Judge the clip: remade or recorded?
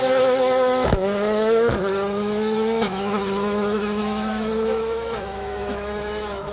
remade